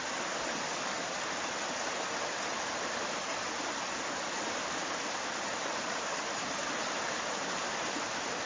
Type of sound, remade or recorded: recorded